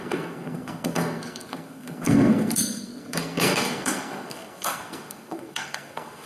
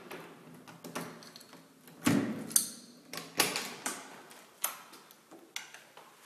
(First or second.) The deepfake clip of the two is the first